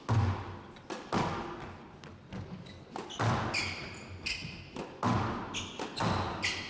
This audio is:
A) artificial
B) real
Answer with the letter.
B